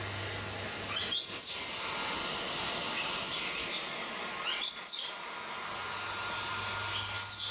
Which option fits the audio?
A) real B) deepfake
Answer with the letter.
A